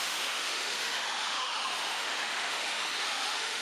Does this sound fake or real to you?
fake